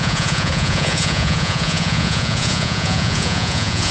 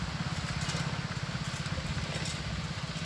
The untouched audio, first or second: second